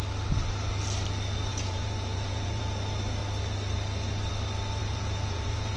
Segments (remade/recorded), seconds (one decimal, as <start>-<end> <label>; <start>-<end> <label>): 0.0-1.5 recorded; 1.5-2.6 remade; 2.6-4.8 recorded; 4.8-5.8 remade